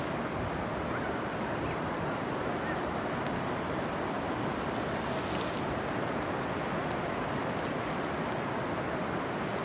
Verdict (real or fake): real